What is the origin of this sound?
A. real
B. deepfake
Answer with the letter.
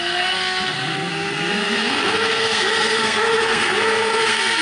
B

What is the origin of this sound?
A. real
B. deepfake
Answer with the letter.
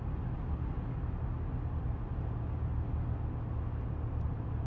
A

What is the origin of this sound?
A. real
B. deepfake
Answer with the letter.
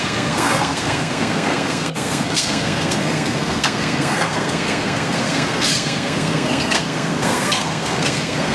B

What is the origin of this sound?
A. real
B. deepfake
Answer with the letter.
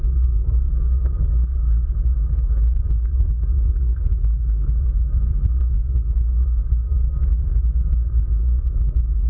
B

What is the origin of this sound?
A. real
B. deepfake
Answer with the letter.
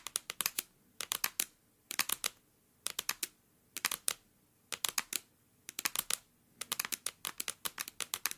A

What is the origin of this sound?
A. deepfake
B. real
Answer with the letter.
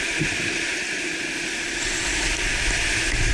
B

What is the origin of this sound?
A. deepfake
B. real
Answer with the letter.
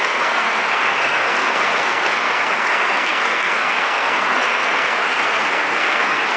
A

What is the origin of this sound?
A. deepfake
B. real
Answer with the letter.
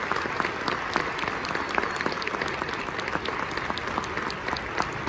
B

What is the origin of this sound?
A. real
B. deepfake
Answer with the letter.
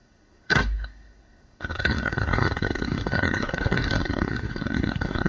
B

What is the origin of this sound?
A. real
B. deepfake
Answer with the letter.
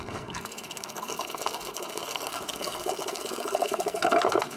B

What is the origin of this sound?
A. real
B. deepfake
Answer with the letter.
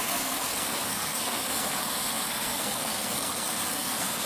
B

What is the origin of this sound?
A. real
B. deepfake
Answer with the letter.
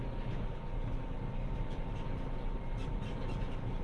A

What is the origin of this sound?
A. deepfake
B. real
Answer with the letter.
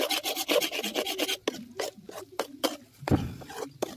B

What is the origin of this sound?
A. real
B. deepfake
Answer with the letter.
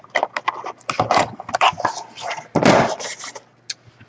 A